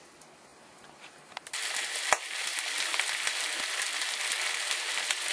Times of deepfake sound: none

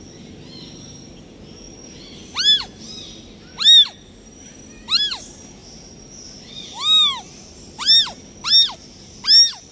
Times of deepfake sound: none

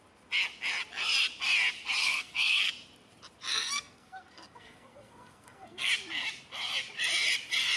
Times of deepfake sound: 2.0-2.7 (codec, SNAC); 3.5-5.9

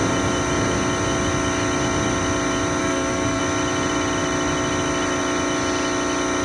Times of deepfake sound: 2.8-3.4 (codec, SNAC)

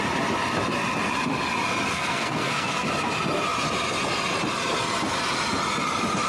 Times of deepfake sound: 1.9-2.9 (codec, SNAC)

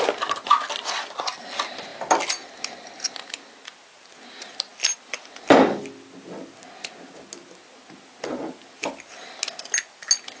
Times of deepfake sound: none